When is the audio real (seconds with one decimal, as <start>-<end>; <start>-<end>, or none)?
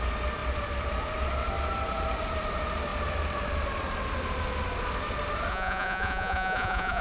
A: 0.0-5.5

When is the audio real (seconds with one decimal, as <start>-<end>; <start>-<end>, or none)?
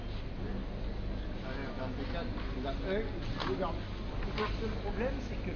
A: 0.0-5.6